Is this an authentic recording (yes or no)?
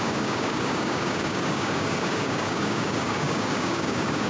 no